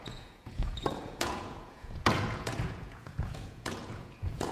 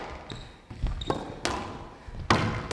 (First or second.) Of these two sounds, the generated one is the first